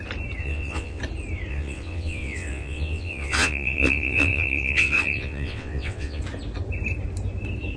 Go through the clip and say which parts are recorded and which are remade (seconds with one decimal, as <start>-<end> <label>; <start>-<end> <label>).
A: 0.0-0.4 recorded; 0.4-1.0 remade; 1.0-1.5 recorded; 1.5-6.2 remade; 6.2-7.8 recorded